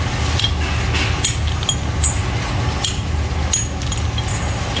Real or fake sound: real